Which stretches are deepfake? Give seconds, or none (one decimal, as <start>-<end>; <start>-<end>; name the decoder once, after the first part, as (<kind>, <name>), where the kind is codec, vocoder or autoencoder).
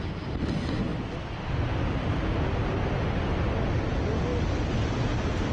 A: none